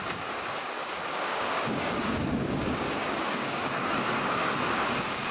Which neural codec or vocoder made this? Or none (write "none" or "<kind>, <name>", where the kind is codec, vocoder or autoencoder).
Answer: codec, DAC